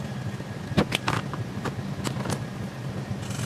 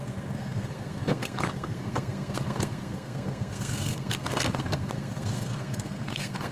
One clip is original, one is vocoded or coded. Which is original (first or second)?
first